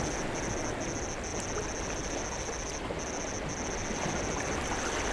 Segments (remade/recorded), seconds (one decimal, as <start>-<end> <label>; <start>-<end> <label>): 0.0-5.1 recorded